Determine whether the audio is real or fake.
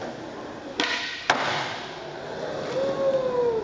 real